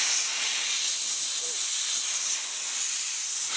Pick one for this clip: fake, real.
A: real